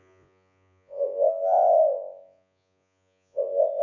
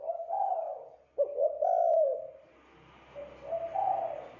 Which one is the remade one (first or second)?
first